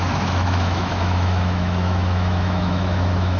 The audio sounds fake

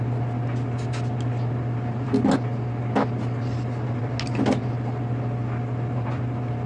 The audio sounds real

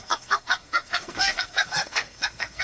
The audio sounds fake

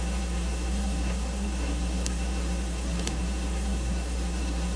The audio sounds fake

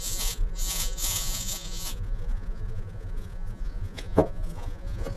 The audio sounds fake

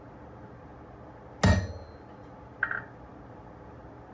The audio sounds real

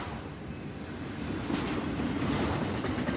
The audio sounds real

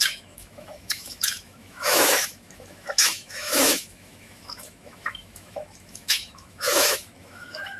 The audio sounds fake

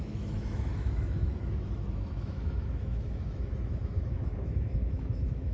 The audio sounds fake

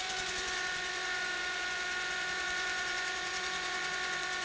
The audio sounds fake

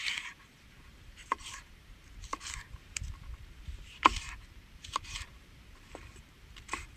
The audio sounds fake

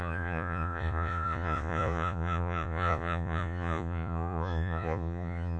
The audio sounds fake